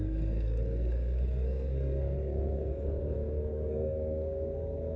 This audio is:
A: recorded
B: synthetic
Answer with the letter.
B